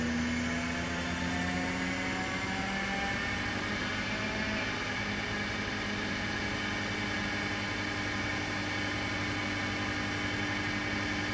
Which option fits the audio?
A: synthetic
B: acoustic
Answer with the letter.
B